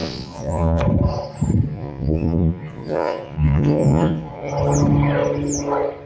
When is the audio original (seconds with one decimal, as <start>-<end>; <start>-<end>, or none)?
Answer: 0.8-1.7; 4.5-6.1